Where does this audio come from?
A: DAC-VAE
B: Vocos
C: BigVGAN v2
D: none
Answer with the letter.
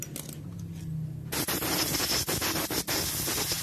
D